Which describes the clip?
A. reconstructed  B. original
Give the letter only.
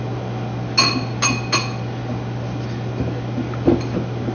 B